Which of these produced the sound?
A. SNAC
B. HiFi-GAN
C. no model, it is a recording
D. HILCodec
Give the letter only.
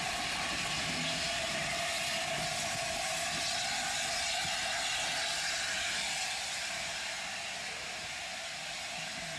C